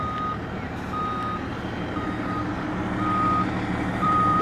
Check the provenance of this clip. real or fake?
fake